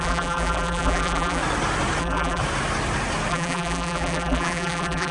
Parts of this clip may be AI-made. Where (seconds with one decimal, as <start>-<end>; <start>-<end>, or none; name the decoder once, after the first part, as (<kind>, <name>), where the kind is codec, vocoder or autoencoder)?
0.0-1.4 (vocoder, BigVGAN v2); 2.0-2.4; 3.3-5.1